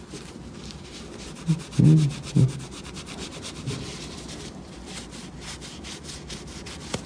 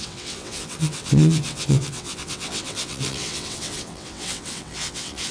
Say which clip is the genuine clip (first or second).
first